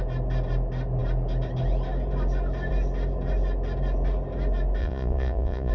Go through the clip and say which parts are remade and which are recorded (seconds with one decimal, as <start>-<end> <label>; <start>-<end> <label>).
0.0-4.8 recorded; 4.8-5.7 remade